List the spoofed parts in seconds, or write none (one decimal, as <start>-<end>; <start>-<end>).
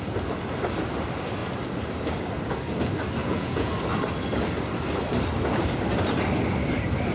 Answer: 3.2-3.7